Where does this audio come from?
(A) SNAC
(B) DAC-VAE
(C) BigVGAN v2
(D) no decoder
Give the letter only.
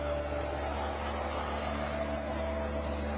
D